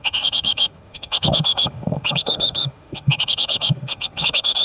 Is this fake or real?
fake